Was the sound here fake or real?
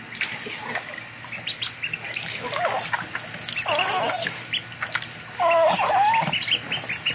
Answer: real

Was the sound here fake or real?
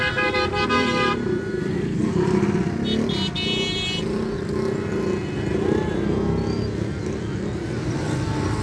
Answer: real